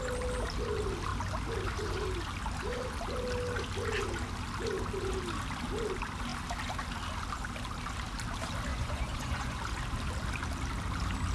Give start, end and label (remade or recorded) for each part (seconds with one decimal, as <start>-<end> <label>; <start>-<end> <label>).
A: 0.0-8.7 recorded; 8.7-9.6 remade; 9.6-11.3 recorded